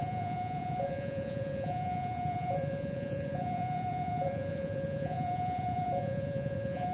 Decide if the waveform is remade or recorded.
remade